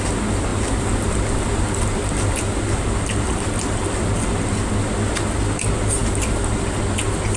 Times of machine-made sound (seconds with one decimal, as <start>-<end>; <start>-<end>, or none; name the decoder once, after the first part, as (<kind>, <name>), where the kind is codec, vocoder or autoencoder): 0.5-4.7 (vocoder, BigVGAN v2); 6.0-6.8